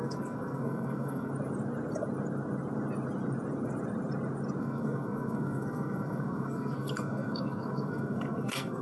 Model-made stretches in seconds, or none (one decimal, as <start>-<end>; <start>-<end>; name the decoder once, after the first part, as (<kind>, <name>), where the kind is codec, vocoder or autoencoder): 0.0-1.3 (codec, SNAC); 4.6-8.8